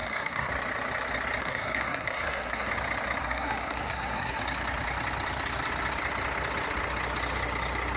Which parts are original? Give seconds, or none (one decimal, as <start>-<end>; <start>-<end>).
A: 0.5-1.4; 2.7-3.2; 4.4-8.0